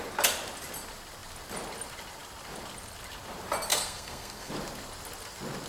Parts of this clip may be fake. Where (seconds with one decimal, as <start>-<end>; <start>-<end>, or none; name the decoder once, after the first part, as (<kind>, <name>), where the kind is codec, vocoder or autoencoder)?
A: 3.7-4.5 (codec, SNAC)